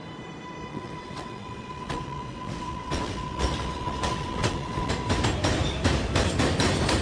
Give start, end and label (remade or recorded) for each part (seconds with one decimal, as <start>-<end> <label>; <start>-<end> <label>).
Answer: 0.0-0.7 recorded; 0.7-4.9 remade; 4.9-7.0 recorded